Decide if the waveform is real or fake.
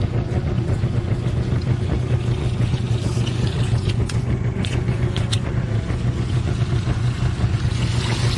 fake